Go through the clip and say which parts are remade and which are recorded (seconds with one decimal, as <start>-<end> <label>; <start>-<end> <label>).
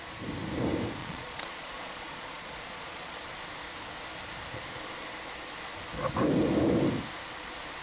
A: 0.0-1.0 recorded; 1.0-3.2 remade; 3.2-7.8 recorded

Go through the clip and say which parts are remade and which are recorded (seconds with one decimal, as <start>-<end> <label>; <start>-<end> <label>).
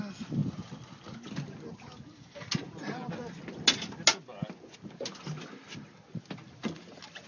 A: 0.0-7.3 recorded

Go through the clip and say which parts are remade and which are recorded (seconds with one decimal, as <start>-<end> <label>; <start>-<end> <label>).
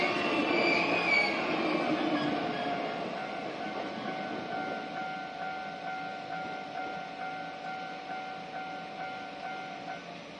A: 0.0-10.4 recorded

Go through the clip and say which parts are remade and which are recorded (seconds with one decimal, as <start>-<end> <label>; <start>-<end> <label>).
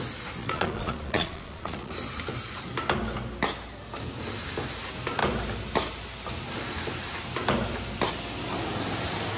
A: 0.0-0.4 recorded; 0.4-1.9 remade; 1.9-9.4 recorded